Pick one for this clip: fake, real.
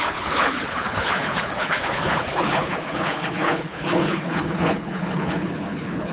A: fake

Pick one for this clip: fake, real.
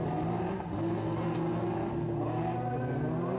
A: real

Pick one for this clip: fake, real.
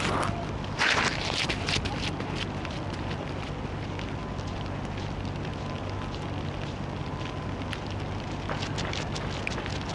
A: real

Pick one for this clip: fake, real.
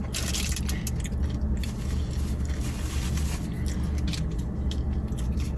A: real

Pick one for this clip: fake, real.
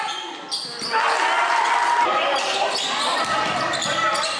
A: real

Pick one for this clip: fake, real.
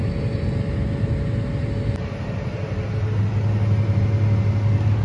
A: real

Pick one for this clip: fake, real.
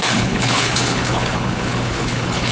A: fake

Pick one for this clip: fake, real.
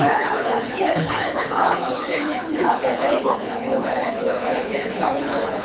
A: fake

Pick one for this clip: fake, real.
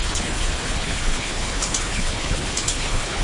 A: fake